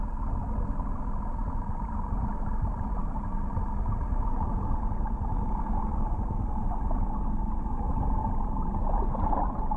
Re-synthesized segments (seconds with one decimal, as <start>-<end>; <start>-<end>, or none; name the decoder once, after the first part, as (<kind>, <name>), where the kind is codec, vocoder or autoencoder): 1.4-5.3 (vocoder, BigVGAN v2); 8.2-9.4